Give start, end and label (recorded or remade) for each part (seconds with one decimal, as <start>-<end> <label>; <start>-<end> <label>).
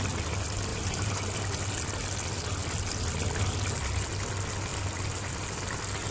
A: 0.0-0.7 recorded; 0.7-1.4 remade; 1.4-6.1 recorded